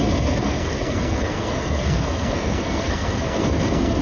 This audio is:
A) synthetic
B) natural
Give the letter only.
A